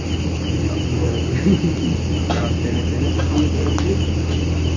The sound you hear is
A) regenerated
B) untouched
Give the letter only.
B